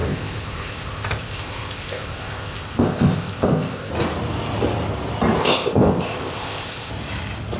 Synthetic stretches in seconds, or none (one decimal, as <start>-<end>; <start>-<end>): 0.0-3.9; 5.4-6.9